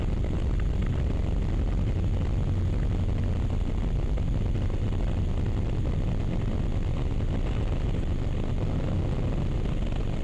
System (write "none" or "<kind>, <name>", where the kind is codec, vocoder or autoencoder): none